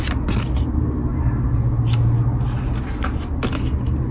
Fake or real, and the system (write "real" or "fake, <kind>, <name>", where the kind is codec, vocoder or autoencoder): real